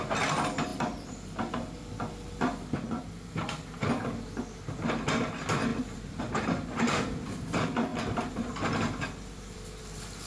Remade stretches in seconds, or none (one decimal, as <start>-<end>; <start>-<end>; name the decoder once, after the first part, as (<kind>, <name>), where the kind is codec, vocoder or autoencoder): 0.7-3.9 (vocoder, BigVGAN v2); 5.7-6.2; 7.9-9.8

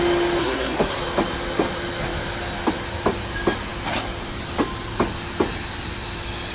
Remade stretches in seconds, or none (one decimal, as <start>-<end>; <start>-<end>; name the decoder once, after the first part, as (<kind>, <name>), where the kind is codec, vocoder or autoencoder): 0.4-1.0 (codec, SNAC)

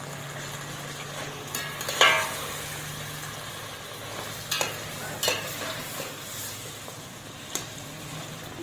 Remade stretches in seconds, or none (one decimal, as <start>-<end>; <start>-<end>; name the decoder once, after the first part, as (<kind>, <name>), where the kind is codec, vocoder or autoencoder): 5.3-7.9 (vocoder, BigVGAN v2)